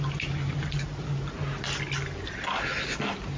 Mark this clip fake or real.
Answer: real